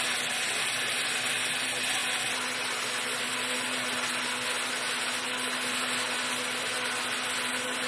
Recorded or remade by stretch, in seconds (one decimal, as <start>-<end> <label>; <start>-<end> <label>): 0.0-7.9 recorded